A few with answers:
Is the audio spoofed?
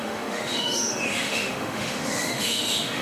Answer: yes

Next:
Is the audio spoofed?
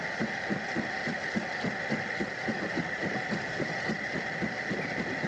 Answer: no